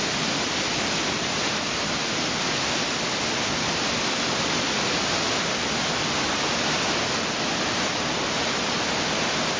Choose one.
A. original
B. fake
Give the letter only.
A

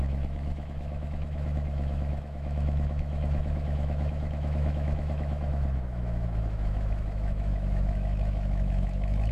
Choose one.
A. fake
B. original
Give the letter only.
A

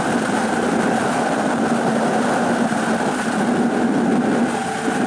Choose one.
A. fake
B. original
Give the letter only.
B